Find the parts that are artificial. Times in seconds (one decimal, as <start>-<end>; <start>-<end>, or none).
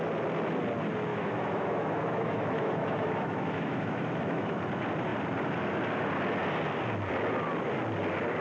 1.1-4.6